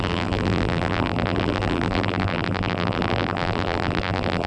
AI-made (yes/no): yes